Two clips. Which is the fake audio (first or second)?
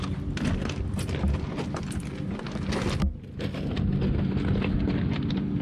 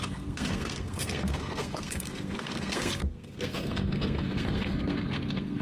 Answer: second